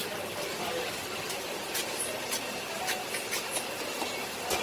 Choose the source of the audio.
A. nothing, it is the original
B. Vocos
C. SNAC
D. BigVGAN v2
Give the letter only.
A